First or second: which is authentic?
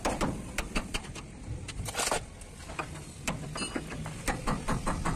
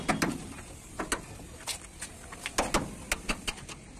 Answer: second